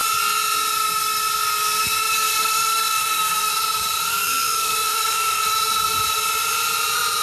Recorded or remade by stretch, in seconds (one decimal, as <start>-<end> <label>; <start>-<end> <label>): 0.0-2.3 recorded; 2.3-3.5 remade; 3.5-4.1 recorded; 4.1-5.4 remade; 5.4-7.2 recorded